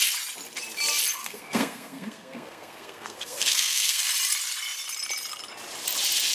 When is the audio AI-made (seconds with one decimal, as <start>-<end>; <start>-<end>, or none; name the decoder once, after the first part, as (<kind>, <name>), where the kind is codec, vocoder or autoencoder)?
1.2-4.0 (codec, SNAC)